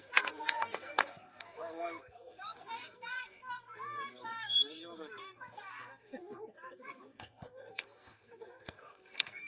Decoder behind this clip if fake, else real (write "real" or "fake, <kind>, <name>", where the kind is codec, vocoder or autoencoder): fake, codec, SNAC